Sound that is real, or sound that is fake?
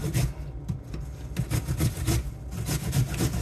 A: real